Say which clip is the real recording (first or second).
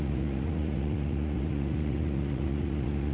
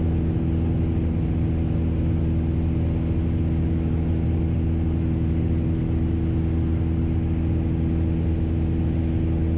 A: second